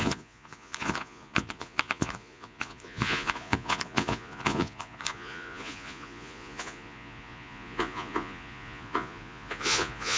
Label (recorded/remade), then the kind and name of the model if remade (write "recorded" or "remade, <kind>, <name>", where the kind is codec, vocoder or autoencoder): remade, vocoder, Vocos